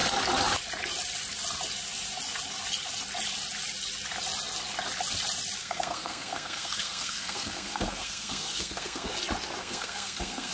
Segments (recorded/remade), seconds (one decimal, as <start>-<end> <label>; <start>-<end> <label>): 0.0-5.6 recorded; 5.6-9.1 remade; 9.1-9.6 recorded; 9.6-10.5 remade